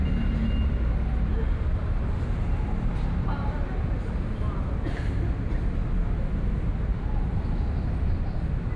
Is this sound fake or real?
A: real